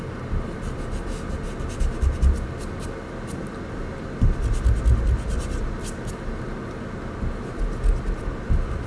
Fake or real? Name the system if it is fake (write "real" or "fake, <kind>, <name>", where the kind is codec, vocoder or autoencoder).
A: real